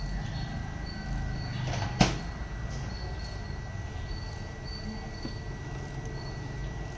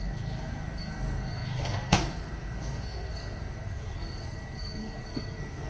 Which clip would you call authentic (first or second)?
first